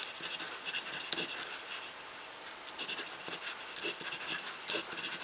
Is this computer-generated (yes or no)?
no